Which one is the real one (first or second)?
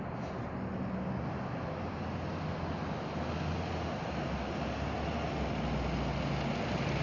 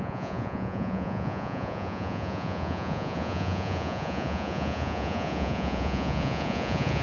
first